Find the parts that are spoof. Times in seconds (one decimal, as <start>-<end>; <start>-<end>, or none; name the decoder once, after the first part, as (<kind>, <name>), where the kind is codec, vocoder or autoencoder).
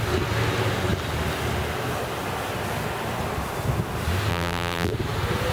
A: 4.3-4.9 (vocoder, BigVGAN v2)